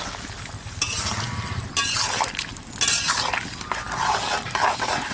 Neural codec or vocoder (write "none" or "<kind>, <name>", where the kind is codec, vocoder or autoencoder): none